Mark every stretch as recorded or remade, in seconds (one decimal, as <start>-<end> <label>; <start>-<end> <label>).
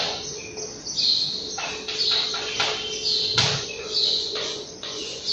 0.0-0.4 remade; 0.4-3.6 recorded; 3.6-5.3 remade